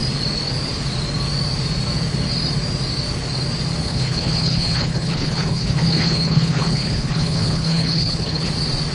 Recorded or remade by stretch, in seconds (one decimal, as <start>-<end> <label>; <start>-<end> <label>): 0.0-3.8 recorded; 3.8-8.5 remade; 8.5-8.9 recorded